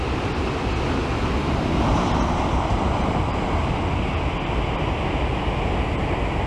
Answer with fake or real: real